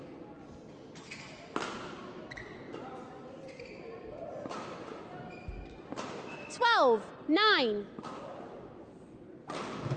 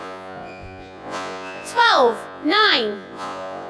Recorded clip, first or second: first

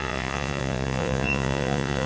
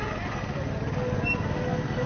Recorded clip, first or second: second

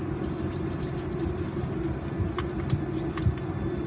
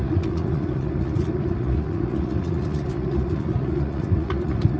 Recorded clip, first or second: first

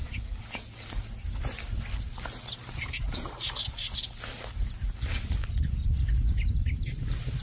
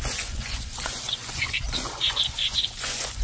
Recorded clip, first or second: first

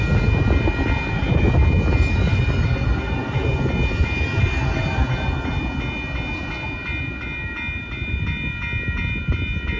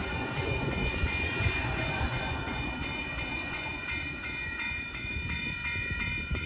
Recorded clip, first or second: first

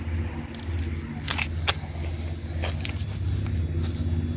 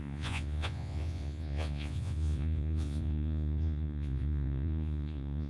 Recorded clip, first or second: first